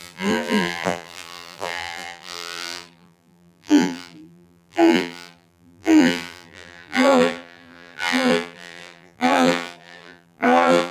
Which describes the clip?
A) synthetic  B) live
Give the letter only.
A